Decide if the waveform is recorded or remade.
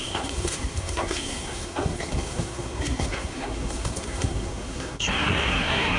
remade